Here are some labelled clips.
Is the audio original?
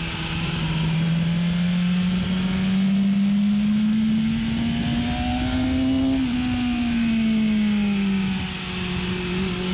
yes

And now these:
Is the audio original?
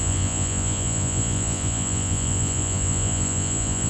no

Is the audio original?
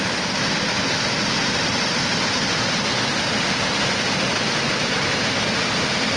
yes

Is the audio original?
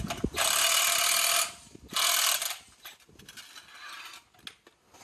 yes